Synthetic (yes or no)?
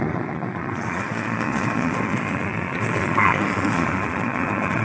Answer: yes